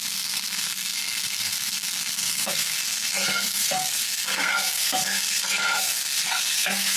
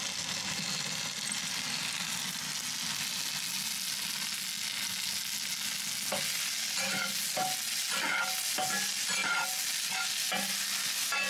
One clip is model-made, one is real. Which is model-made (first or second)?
first